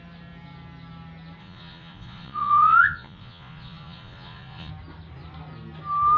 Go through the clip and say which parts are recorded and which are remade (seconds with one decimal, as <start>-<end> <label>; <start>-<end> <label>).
0.0-1.4 recorded; 1.4-4.7 remade; 4.7-6.2 recorded